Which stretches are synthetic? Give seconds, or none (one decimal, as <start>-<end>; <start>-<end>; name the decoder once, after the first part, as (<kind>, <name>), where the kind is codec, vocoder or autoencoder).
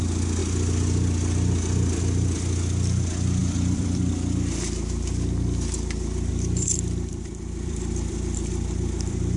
3.4-4.1 (vocoder, BigVGAN v2); 6.3-9.4